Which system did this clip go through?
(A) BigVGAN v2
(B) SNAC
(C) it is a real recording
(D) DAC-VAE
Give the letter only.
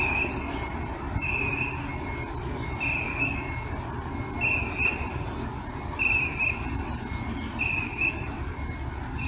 C